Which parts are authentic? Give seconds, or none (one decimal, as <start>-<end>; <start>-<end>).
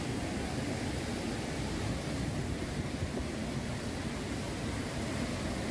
0.0-5.7